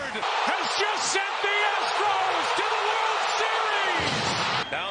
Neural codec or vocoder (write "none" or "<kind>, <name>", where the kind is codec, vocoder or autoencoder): none